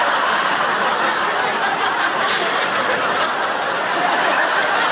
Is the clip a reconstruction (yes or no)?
yes